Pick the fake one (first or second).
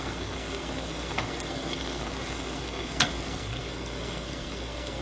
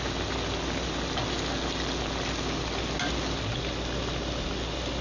first